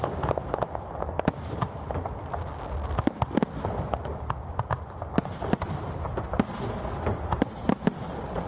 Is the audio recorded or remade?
recorded